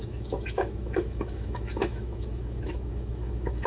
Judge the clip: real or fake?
fake